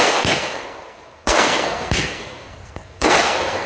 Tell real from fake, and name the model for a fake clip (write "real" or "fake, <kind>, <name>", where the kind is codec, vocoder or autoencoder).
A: fake, codec, SNAC